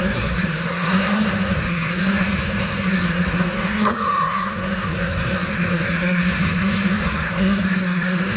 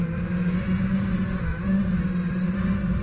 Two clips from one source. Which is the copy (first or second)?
first